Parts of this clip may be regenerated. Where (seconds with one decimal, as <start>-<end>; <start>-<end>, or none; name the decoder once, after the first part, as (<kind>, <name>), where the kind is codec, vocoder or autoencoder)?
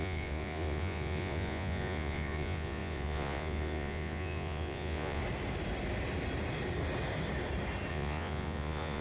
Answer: 0.0-5.2 (vocoder, Vocos); 7.9-9.0